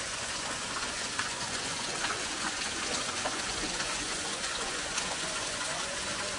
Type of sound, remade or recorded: remade